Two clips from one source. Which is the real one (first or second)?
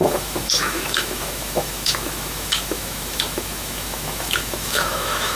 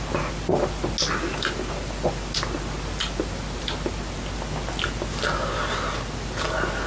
second